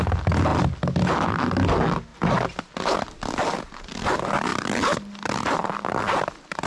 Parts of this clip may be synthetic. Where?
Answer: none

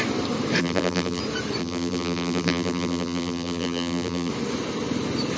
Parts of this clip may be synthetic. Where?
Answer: 0.6-1.2; 1.6-4.3

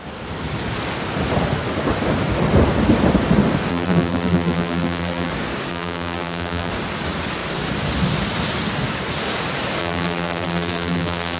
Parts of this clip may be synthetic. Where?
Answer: 3.7-5.3; 5.7-6.7; 9.8-11.4

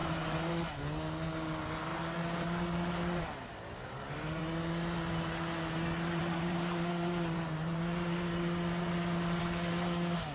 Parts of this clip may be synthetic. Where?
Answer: 0.0-0.5; 1.9-4.4; 6.2-9.4

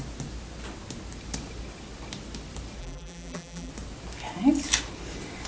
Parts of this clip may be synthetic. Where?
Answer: 2.8-3.7

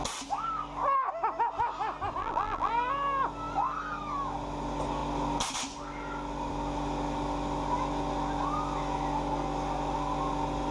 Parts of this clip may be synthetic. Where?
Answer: 2.2-2.7

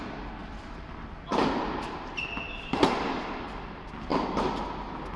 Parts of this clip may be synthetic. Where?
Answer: 0.4-3.5